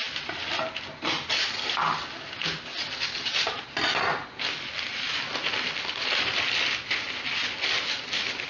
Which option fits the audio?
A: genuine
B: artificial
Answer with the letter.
A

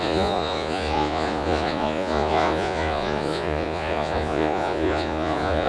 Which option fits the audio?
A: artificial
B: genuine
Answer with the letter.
A